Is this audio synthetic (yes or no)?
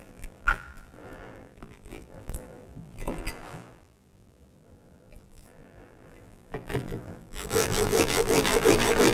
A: yes